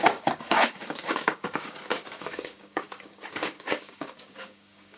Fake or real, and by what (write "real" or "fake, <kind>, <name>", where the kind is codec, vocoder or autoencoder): fake, codec, DAC